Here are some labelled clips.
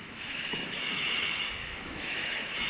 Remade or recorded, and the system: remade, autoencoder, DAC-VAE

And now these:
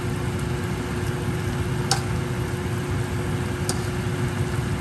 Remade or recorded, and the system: recorded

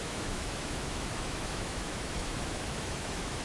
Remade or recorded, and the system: remade, autoencoder, DAC-VAE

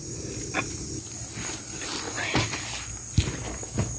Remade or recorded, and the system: recorded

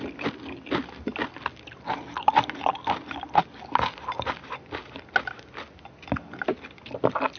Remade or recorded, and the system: recorded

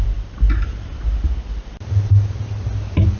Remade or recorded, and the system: recorded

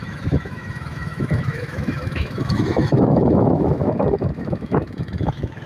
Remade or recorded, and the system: remade, autoencoder, DAC-VAE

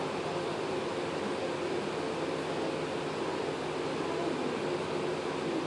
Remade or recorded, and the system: recorded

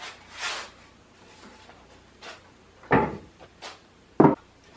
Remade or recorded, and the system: recorded